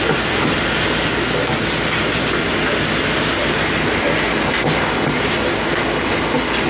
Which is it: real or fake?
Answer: real